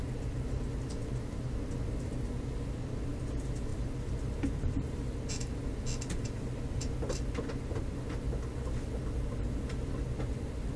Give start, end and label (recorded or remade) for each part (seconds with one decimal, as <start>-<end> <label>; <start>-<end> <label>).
0.0-3.7 recorded; 3.7-5.3 remade; 5.3-10.8 recorded